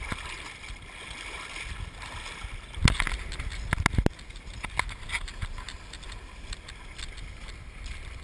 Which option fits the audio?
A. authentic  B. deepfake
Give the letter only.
A